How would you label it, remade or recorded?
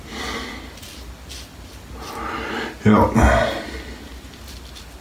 recorded